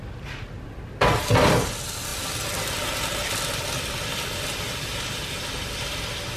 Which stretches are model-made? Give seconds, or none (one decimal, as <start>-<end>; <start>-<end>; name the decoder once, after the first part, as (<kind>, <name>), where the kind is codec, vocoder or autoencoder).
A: none

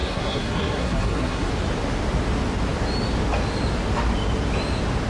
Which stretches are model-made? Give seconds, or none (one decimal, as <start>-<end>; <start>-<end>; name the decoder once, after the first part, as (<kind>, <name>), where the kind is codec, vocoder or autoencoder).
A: 0.0-1.5 (codec, SNAC)

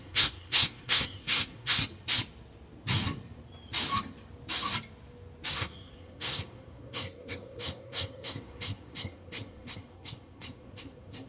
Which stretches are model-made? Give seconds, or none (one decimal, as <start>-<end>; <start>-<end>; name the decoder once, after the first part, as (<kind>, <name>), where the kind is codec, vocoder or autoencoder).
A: 0.0-1.8 (codec, SNAC); 5.5-11.3

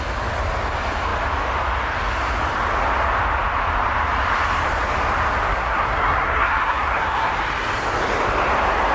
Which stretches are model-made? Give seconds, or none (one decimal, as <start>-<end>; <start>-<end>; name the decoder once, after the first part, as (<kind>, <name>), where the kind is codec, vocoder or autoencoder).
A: 5.5-7.3 (codec, SNAC)

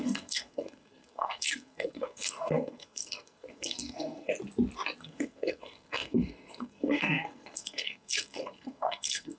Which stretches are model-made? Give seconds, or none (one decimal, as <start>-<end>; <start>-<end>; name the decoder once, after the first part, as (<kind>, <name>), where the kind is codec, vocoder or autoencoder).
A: 0.0-4.3 (codec, SNAC); 5.0-9.4

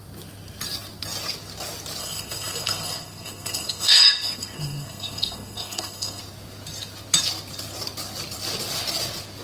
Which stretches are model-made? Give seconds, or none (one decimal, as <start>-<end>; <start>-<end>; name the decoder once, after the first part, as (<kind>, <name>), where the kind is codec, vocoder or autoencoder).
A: 2.0-6.2 (codec, SNAC)

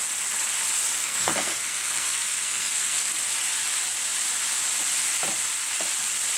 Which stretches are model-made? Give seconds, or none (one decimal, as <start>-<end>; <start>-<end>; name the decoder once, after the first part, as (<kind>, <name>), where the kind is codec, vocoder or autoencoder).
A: 1.0-3.1 (codec, SNAC)